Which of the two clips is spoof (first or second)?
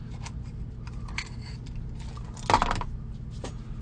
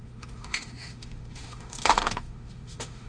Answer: second